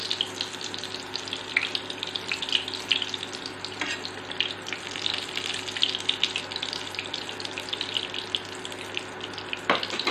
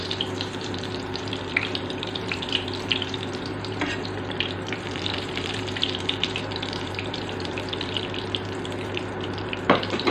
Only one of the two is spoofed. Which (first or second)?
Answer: second